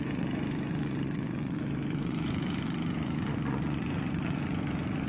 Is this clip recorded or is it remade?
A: remade